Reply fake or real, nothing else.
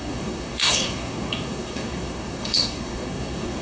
fake